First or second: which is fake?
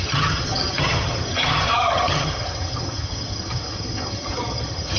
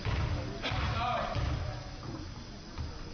first